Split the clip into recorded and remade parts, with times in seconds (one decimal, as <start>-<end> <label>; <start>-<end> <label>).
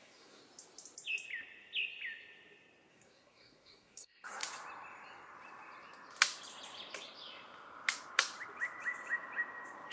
0.0-0.4 remade; 0.4-2.9 recorded; 2.9-4.4 remade; 4.4-9.9 recorded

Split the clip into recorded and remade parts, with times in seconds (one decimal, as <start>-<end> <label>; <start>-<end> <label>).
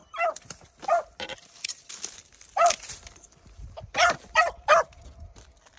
0.0-5.8 recorded